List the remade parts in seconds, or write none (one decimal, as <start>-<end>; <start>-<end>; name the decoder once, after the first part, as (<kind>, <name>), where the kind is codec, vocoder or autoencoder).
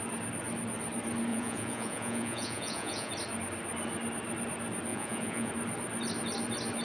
1.3-3.1 (vocoder, Vocos); 4.9-5.5